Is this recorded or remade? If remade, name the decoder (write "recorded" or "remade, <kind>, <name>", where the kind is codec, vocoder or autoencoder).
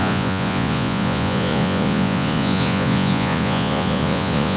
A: remade, vocoder, Vocos